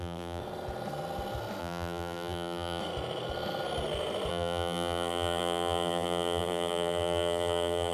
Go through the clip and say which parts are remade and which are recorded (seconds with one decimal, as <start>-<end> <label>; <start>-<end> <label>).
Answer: 0.0-0.4 remade; 0.4-1.6 recorded; 1.6-2.8 remade; 2.8-4.3 recorded; 4.3-7.9 remade